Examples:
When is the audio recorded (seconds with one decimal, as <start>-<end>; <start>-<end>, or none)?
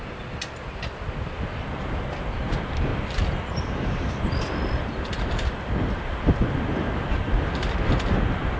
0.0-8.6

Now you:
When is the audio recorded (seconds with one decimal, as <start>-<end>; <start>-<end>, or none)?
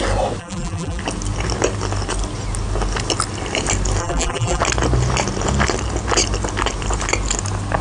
0.0-0.4; 1.0-4.0; 4.6-7.8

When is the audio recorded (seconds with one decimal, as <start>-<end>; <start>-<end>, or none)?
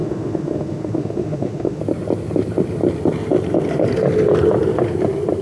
1.8-5.4